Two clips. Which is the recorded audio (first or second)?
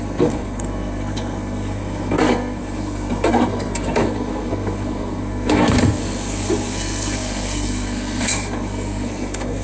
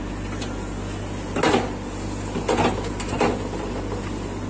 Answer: second